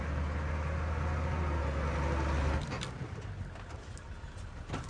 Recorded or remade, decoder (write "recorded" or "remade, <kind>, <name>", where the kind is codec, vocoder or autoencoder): recorded